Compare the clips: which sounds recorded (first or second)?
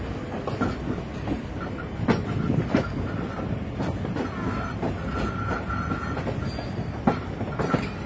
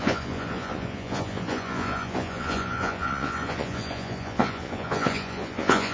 first